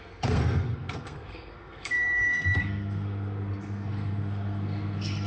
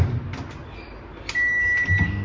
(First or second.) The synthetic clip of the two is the first